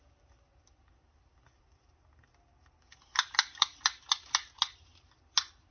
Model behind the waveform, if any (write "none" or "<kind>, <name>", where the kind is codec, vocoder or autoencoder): none